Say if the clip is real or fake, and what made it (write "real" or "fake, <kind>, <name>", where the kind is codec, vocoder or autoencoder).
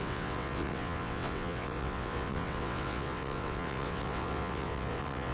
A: fake, vocoder, WaveNeXt